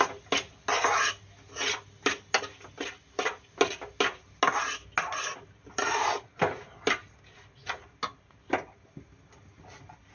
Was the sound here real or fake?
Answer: real